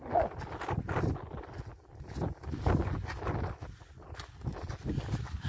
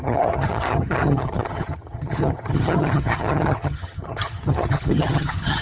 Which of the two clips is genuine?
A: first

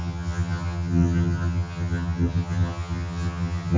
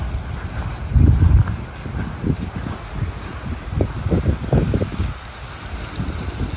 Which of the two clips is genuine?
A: second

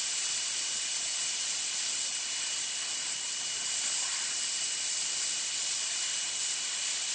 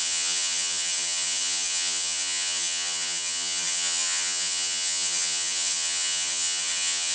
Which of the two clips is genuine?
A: first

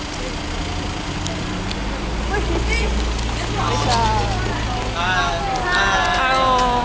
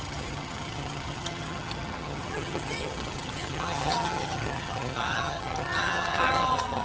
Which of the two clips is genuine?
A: first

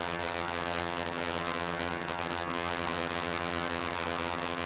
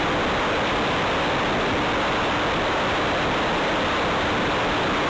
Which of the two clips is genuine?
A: second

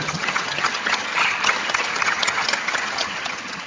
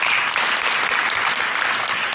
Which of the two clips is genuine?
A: second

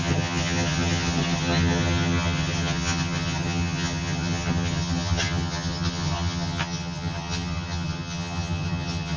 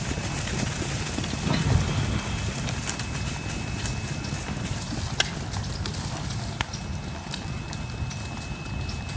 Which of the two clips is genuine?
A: second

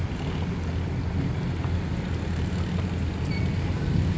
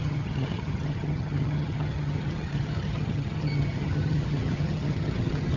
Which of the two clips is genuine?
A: first